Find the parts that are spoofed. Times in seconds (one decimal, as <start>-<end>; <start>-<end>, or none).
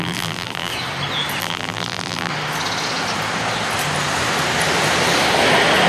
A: 0.0-0.7; 1.4-2.3